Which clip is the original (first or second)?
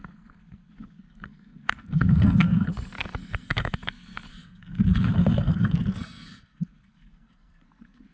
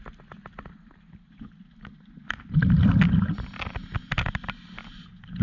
second